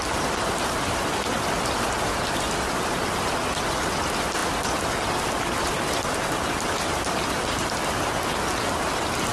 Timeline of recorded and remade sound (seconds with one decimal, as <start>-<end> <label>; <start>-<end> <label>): 0.0-9.3 recorded